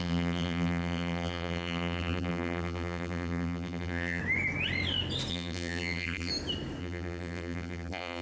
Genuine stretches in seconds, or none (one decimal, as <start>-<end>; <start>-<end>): 4.2-5.3; 6.3-6.8